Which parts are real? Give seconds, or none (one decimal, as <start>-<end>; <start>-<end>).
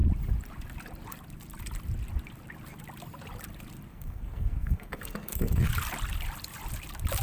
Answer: 0.0-3.9; 5.7-7.2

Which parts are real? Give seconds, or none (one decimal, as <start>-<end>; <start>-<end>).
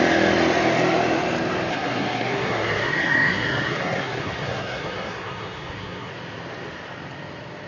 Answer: 0.0-1.7; 6.1-7.7